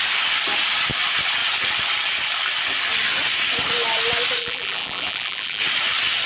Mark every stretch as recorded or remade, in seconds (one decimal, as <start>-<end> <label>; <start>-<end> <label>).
0.0-4.4 recorded; 4.4-5.6 remade; 5.6-6.3 recorded